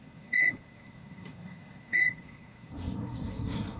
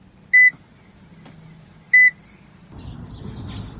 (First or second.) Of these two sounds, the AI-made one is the first